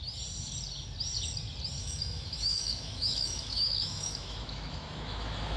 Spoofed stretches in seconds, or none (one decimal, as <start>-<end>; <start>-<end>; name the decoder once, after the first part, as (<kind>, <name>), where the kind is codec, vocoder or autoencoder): 1.8-5.6 (autoencoder, DAC-VAE)